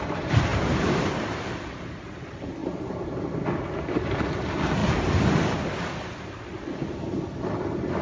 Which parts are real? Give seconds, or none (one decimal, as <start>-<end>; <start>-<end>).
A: 0.0-0.5; 1.9-2.6; 3.2-8.0

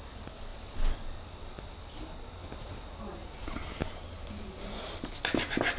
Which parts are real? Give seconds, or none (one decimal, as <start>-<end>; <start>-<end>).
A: 0.0-3.2; 5.1-5.8

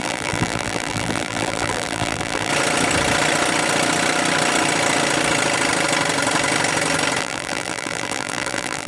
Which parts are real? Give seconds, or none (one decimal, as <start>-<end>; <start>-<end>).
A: 2.5-7.2